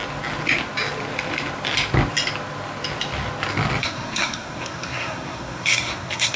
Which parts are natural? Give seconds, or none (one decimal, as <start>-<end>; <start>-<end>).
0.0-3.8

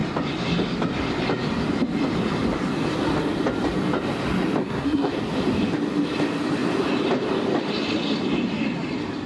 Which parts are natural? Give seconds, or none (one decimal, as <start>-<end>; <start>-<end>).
0.0-4.6; 5.1-9.3

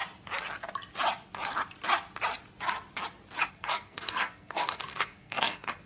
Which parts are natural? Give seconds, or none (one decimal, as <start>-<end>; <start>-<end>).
0.0-3.5

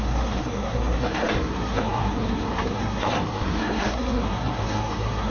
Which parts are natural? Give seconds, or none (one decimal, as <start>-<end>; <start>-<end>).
none

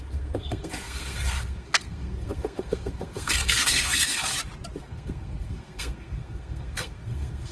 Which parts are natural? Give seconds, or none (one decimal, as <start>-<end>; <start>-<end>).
4.3-4.8